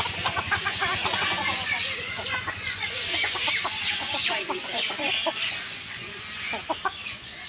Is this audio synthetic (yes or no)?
yes